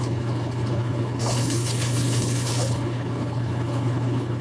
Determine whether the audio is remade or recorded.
remade